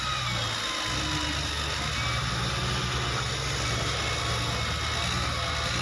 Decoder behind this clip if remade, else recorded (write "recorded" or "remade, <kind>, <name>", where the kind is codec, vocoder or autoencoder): recorded